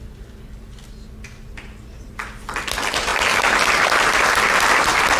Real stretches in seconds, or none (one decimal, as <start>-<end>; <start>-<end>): 0.0-5.2